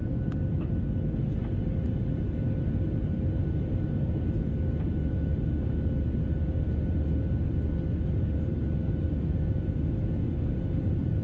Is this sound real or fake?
real